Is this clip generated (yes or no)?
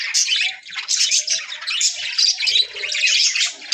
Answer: no